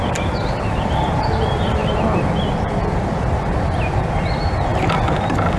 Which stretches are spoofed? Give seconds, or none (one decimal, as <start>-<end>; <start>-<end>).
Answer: 0.0-4.7